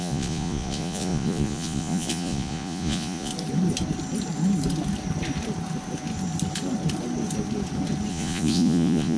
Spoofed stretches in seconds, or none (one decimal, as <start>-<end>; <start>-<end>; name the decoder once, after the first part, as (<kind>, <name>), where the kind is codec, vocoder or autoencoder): 0.0-3.3 (vocoder, Vocos); 8.1-9.2